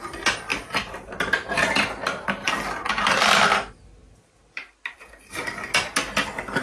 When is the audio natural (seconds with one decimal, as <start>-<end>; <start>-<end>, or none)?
0.0-0.5; 2.5-6.6